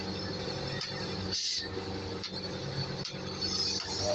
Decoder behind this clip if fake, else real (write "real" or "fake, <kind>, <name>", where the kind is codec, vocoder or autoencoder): real